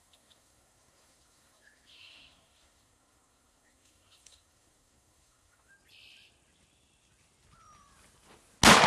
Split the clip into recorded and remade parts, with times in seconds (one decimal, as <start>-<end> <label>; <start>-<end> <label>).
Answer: 0.0-5.7 remade; 5.7-8.9 recorded